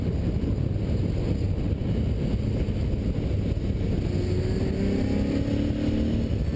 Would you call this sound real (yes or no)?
yes